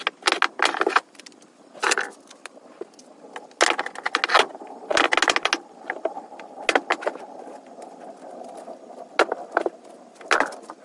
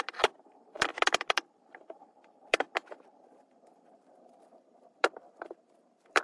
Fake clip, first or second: second